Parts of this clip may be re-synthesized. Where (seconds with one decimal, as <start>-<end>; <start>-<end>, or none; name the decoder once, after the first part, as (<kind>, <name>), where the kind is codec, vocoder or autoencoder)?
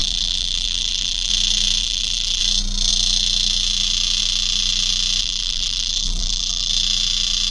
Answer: 0.0-1.3 (vocoder, BigVGAN v2); 1.8-2.4; 5.2-6.7